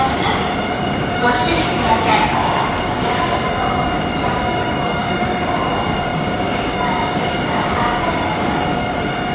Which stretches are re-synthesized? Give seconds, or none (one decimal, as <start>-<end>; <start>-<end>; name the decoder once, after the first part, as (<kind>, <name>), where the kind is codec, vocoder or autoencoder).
0.0-9.3 (codec, DAC)